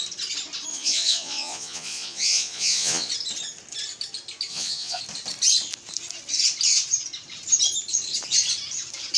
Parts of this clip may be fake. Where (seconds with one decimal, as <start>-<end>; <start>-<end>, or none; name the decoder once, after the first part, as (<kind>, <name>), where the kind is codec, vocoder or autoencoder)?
0.7-3.1 (vocoder, Vocos); 4.5-5.0